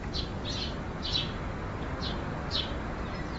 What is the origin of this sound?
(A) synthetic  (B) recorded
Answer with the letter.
B